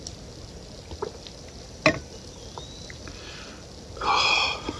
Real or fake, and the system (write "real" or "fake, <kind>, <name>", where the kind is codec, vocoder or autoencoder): real